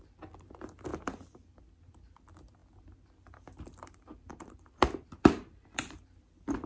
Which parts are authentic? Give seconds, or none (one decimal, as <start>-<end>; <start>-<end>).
none